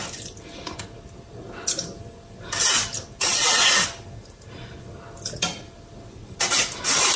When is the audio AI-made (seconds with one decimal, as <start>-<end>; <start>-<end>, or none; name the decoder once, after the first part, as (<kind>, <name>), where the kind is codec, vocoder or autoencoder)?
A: none